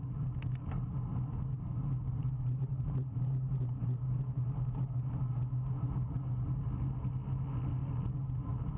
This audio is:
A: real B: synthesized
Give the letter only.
A